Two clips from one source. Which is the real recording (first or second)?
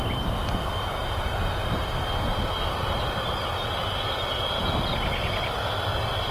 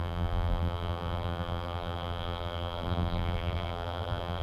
first